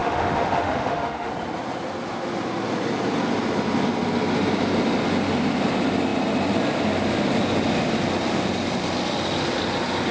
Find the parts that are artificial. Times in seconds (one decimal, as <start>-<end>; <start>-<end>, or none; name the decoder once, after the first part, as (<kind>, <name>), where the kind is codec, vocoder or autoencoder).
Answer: 0.0-1.3 (autoencoder, DAC-VAE)